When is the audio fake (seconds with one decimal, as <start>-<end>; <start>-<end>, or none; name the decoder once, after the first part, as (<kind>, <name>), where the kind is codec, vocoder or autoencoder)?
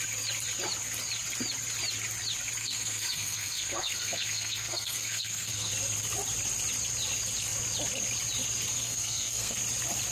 2.6-5.7 (codec, SNAC); 8.7-9.6